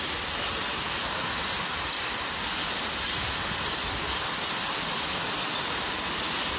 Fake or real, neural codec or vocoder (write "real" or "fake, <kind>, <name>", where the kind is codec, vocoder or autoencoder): real